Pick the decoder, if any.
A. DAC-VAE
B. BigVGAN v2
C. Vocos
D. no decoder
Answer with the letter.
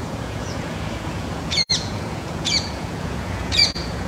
C